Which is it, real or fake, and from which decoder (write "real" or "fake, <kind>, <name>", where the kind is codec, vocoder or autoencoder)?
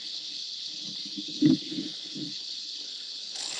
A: fake, codec, HILCodec